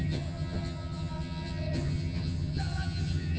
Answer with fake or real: fake